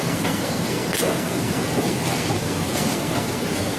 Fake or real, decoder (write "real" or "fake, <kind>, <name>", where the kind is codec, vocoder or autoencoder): fake, codec, SNAC